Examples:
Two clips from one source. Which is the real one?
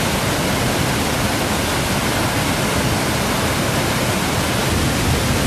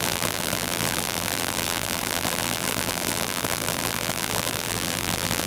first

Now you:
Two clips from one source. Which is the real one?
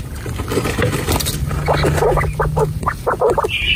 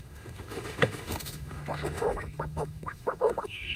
first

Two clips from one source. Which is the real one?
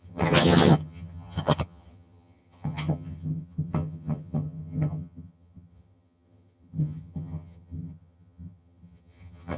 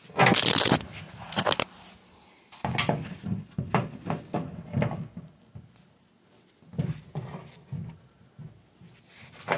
second